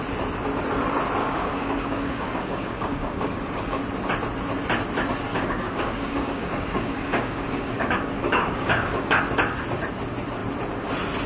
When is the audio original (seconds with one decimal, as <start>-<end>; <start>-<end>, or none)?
0.0-1.2; 3.8-5.3; 9.2-11.3